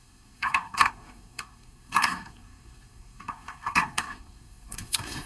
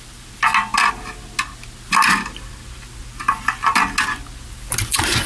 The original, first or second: second